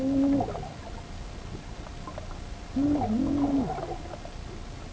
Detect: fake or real real